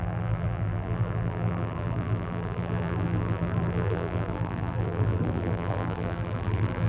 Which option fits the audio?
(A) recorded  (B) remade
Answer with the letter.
B